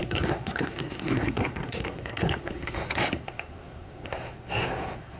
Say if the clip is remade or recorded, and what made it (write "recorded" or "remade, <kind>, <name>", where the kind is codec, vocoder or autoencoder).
remade, codec, SNAC